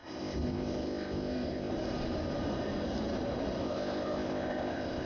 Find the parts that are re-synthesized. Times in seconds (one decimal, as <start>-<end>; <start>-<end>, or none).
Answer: 0.0-1.7; 3.6-5.1